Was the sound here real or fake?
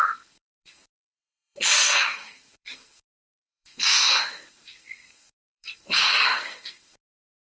fake